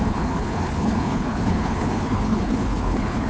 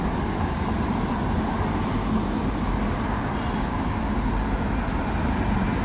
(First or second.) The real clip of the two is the second